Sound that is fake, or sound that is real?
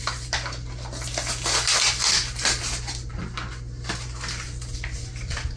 real